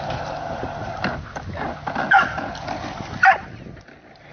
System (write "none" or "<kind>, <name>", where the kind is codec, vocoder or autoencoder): none